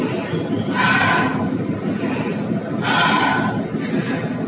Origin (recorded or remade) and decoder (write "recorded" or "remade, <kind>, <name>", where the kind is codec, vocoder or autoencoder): recorded